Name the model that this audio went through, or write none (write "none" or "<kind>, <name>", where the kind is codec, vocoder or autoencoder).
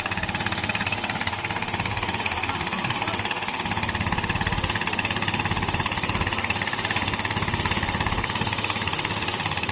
none